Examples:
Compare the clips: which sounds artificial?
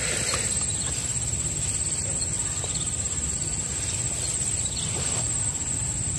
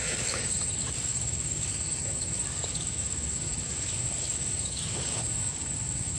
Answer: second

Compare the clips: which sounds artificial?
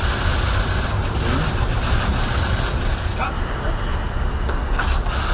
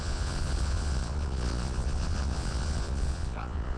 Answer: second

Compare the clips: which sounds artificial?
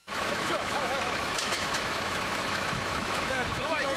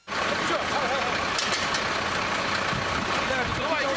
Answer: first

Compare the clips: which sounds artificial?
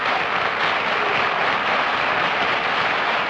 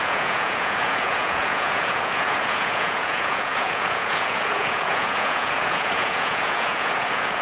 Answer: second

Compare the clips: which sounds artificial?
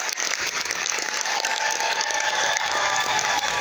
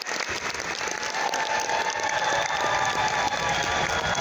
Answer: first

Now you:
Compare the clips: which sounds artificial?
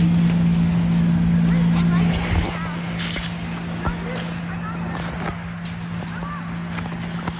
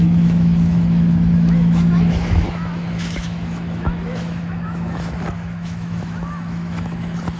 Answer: second